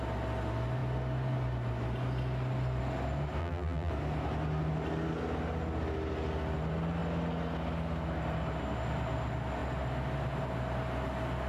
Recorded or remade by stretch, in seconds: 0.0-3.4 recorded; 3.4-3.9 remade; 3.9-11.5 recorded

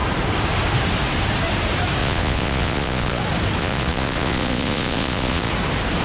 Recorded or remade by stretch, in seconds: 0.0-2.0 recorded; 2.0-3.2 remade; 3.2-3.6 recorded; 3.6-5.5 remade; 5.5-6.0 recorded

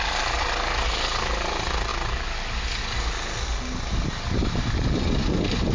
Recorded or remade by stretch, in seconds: 0.0-5.7 recorded